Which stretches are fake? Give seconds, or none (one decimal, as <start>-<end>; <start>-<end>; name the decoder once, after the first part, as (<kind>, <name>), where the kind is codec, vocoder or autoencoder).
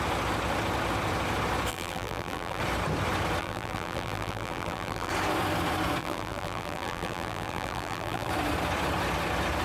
1.7-2.6 (vocoder, BigVGAN v2); 3.4-5.1; 6.0-8.3